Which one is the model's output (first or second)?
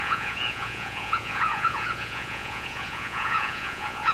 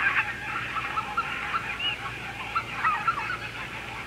first